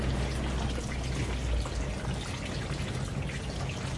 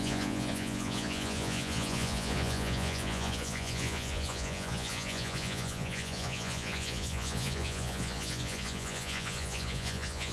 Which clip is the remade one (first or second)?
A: second